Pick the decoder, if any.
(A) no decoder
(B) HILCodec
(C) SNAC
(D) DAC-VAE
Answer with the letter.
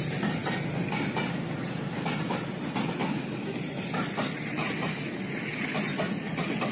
A